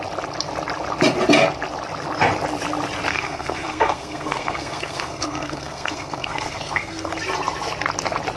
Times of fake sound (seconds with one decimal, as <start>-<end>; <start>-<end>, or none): 3.1-7.1